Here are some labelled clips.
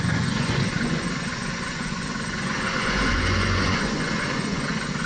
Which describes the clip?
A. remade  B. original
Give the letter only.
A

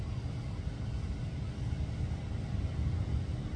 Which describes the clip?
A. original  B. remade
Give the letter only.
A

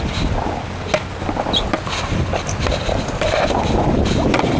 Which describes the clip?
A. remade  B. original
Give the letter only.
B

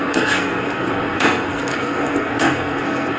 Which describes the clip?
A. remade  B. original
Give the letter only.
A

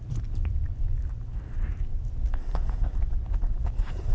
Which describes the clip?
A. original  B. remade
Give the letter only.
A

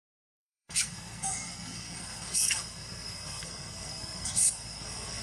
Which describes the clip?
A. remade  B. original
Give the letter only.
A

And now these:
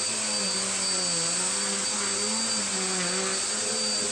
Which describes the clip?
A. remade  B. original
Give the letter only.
B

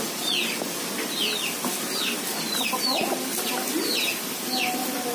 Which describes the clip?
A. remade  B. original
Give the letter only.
B